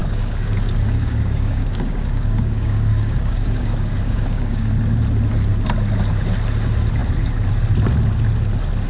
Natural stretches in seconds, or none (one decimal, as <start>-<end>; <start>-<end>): 4.7-8.9